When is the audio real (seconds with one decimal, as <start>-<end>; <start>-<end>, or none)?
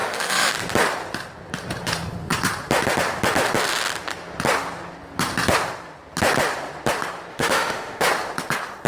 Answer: 0.5-7.3; 8.1-8.9